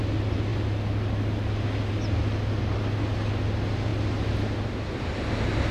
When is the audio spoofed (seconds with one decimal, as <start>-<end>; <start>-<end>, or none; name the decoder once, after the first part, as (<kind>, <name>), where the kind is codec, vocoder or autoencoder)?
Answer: none